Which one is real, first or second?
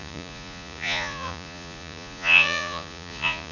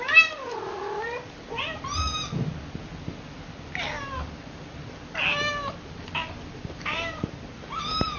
second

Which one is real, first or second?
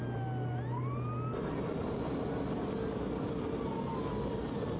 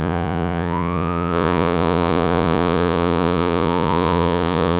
first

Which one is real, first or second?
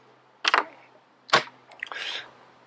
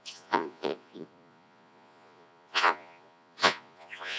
first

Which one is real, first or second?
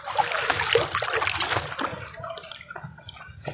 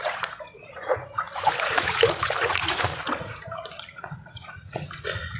first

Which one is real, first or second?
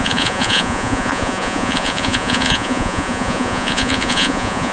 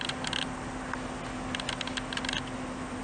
second